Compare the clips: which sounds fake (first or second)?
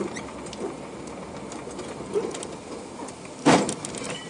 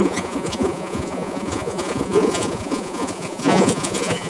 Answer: second